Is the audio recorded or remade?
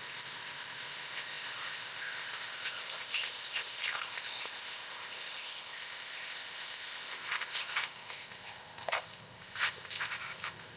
remade